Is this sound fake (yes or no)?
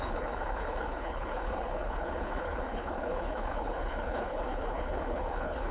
yes